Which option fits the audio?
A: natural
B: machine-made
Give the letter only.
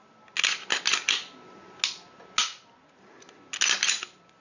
A